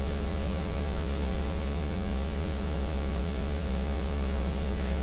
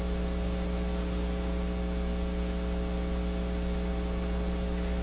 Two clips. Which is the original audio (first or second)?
second